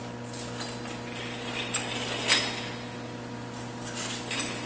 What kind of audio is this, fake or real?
real